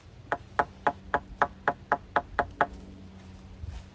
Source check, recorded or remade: recorded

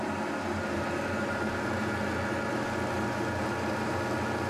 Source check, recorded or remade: recorded